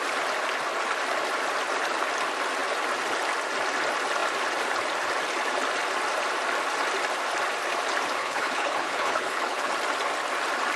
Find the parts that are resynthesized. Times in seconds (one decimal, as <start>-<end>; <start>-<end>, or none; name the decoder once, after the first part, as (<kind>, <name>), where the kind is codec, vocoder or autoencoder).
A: 8.2-9.7 (codec, HILCodec)